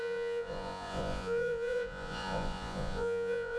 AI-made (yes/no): yes